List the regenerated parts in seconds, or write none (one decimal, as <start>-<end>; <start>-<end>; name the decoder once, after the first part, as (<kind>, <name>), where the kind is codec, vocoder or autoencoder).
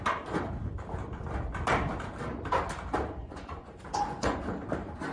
3.2-4.4 (vocoder, Vocos)